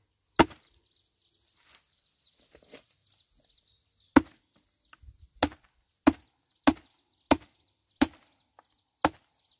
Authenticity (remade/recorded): recorded